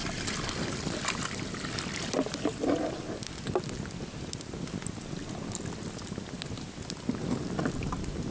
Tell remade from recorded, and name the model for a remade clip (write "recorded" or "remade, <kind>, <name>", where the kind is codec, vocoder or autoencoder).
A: recorded